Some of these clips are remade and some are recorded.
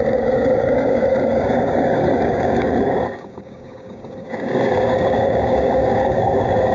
remade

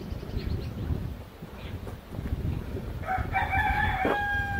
recorded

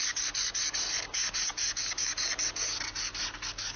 recorded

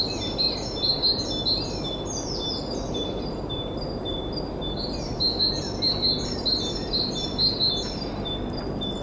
recorded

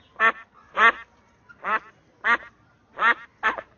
recorded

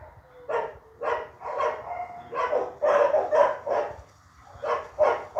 recorded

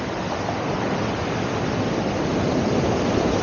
recorded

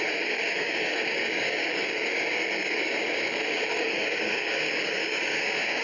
remade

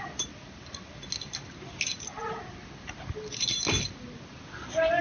recorded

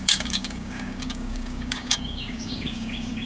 remade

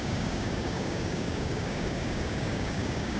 remade